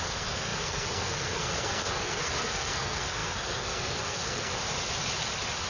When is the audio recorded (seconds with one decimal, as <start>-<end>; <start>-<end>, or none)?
4.5-5.7